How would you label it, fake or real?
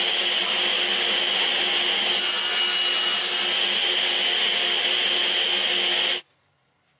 real